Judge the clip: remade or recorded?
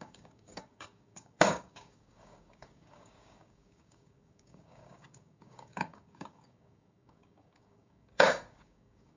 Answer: remade